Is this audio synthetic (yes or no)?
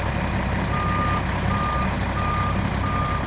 no